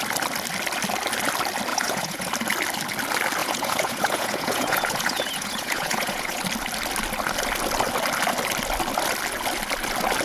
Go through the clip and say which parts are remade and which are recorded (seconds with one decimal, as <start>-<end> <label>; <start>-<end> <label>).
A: 0.0-1.7 recorded; 1.7-2.3 remade; 2.3-3.4 recorded; 3.4-6.4 remade; 6.4-10.2 recorded